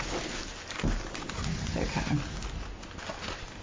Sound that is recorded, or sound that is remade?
recorded